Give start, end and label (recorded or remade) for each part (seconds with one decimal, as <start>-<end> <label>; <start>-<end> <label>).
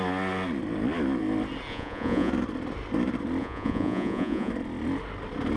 0.0-1.7 recorded; 1.7-2.3 remade; 2.3-3.4 recorded; 3.4-4.5 remade; 4.5-5.6 recorded